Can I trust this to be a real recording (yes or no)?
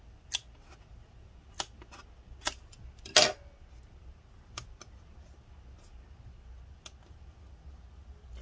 yes